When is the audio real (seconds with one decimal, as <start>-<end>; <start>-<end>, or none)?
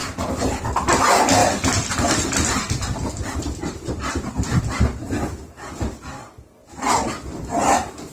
0.0-1.4; 4.6-6.6